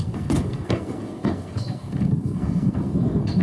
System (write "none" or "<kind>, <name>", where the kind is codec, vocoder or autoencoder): codec, SNAC